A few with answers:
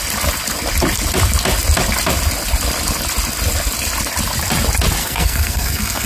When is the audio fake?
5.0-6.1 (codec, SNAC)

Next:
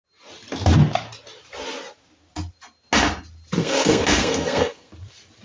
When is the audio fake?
3.6-4.9 (codec, SNAC)

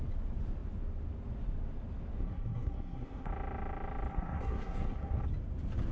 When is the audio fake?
2.2-3.3 (codec, SNAC); 4.1-5.2

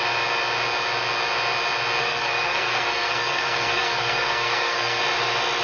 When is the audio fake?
2.0-5.0 (codec, SNAC)